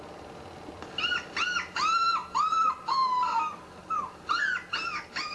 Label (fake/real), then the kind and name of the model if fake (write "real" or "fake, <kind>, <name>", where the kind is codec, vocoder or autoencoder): real